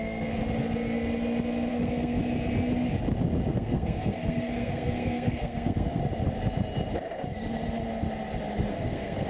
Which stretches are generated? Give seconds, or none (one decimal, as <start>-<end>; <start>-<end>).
0.0-0.4; 1.7-2.2; 3.5-6.0; 8.7-9.3